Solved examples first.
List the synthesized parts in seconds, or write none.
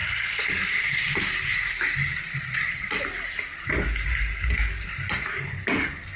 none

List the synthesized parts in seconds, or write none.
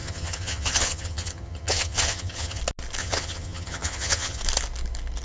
0.0-2.6 (vocoder, HiFi-GAN); 3.0-4.4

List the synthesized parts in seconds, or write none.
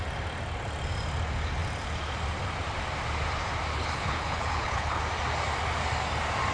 3.7-5.0 (codec, HILCodec)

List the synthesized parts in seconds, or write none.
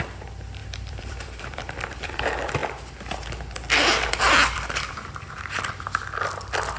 0.0-2.6 (vocoder, BigVGAN v2); 4.1-6.8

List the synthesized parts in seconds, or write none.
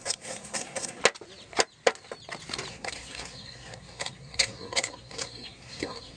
0.0-1.0 (codec, SNAC); 2.7-6.2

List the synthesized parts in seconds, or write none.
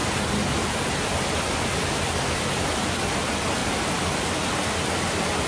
none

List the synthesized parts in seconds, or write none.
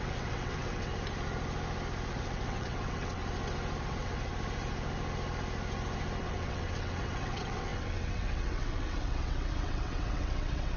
0.0-0.9 (vocoder, WaveNeXt); 2.1-3.2; 3.8-4.3; 6.2-10.8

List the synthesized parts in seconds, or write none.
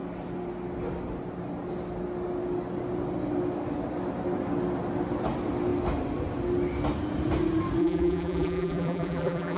7.8-9.6 (vocoder, BigVGAN v2)